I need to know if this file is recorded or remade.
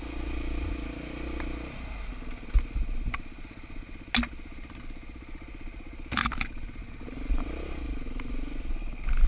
recorded